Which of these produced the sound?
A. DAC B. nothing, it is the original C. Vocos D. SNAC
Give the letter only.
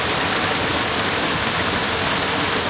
B